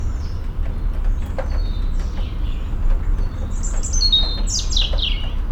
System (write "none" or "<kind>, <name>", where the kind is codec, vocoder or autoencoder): none